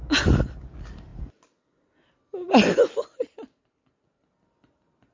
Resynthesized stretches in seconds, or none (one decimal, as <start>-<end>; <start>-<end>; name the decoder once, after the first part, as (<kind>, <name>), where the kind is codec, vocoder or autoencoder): none